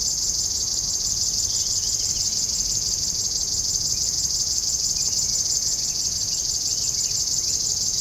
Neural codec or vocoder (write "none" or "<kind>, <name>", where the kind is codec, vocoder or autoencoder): vocoder, BigVGAN v2